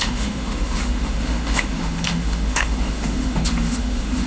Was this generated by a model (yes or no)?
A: yes